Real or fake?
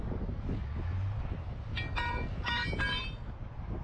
real